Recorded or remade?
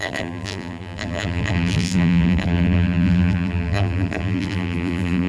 remade